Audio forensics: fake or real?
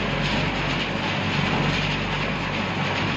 real